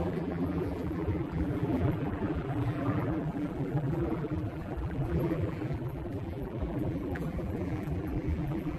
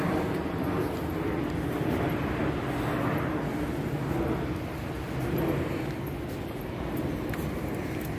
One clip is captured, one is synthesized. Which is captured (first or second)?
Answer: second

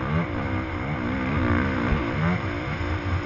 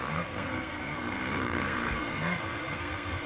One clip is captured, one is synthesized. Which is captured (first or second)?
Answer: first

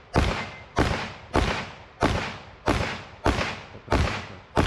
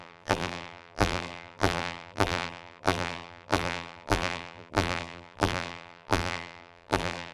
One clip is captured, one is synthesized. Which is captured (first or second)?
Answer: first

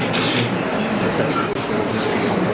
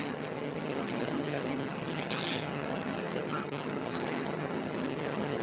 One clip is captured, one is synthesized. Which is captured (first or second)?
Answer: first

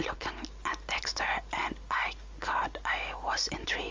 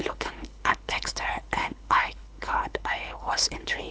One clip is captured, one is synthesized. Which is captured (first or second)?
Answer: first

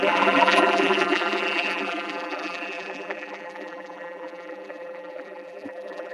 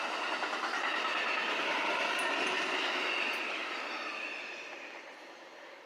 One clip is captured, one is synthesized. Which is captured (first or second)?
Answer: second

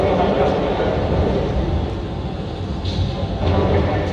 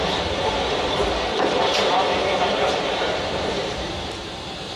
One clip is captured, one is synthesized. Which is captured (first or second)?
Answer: first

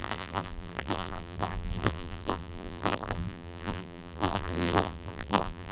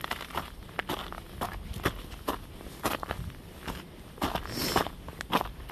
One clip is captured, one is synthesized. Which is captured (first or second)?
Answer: second